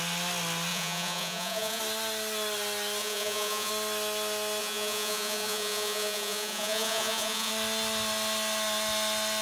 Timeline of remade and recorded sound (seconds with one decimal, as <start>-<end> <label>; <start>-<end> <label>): 0.0-0.7 recorded; 0.7-1.8 remade; 1.8-3.0 recorded; 3.0-3.7 remade; 3.7-4.6 recorded; 4.6-7.5 remade; 7.5-9.4 recorded